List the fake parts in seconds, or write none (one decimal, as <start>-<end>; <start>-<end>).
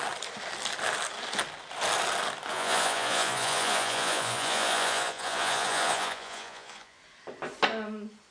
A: 2.5-7.0